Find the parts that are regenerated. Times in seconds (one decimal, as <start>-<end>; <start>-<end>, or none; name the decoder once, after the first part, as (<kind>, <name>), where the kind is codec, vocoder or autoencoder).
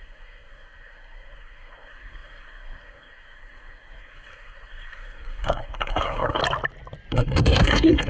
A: 0.0-6.4 (codec, SNAC); 7.1-8.1